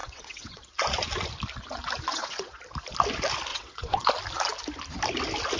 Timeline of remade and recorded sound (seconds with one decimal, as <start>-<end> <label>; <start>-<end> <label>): 0.0-0.7 remade; 0.7-2.1 recorded; 2.1-2.6 remade; 2.6-3.5 recorded; 3.5-4.1 remade; 4.1-5.6 recorded